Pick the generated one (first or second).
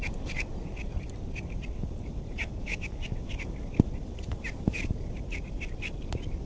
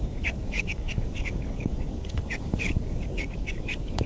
second